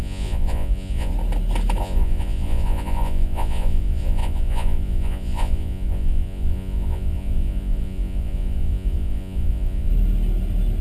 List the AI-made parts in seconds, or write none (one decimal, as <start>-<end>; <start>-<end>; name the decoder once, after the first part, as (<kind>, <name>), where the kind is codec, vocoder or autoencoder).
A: 0.0-1.1 (vocoder, Vocos); 1.8-9.9